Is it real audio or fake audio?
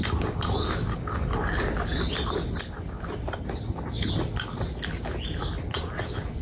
real